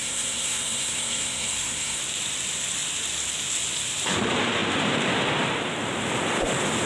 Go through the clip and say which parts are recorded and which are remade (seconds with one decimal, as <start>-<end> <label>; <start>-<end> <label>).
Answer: 0.0-2.0 remade; 2.0-6.9 recorded